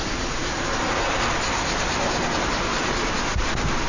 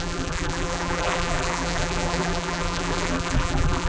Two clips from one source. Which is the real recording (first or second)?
first